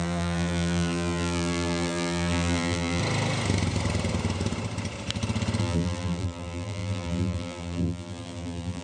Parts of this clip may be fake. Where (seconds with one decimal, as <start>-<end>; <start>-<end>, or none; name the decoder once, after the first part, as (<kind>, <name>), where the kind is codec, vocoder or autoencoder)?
0.0-3.0 (vocoder, BigVGAN v2); 5.6-8.8